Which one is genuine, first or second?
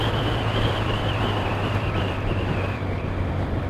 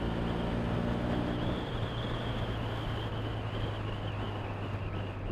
second